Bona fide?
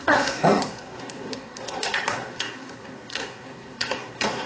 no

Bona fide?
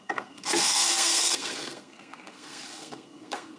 no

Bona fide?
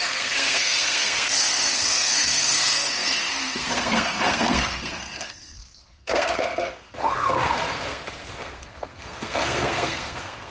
no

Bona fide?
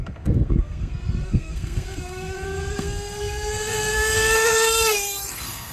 no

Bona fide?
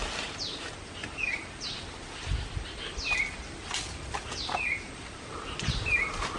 yes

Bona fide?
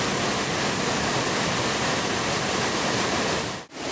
yes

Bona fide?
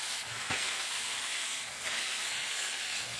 no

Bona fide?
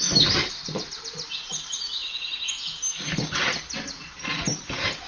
yes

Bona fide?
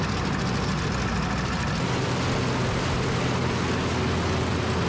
yes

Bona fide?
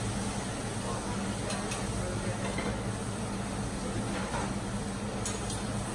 yes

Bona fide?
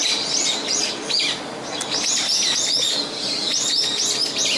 yes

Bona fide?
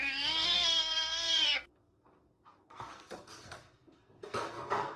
no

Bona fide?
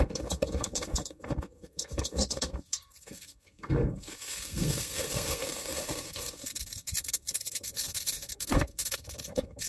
no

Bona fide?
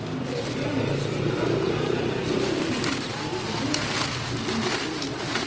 yes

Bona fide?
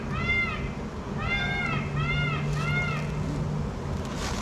yes